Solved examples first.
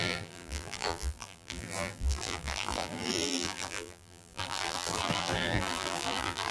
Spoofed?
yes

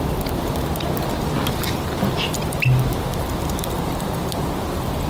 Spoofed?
no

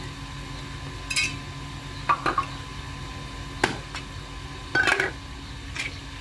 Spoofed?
no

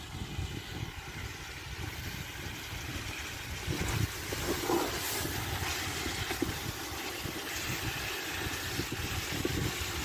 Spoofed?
no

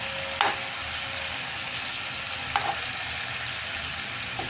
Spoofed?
no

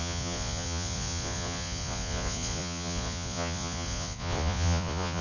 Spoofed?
yes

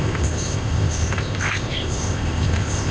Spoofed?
yes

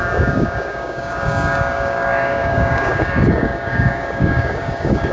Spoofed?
yes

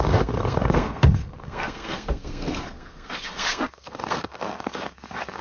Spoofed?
yes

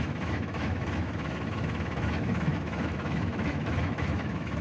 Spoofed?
yes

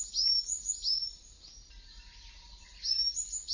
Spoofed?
no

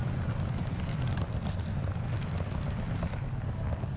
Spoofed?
no